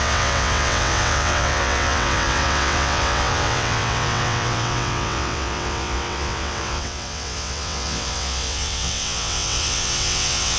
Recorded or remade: remade